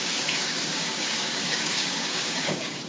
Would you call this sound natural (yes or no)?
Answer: no